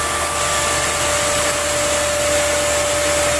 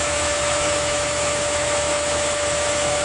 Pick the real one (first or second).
first